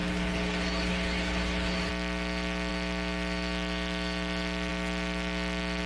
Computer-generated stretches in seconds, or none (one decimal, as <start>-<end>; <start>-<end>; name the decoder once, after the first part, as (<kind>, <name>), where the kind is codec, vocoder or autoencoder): 0.0-1.9 (codec, HILCodec)